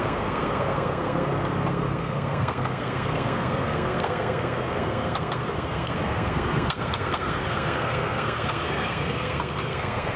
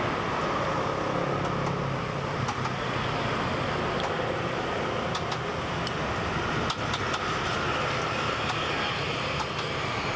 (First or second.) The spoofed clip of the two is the first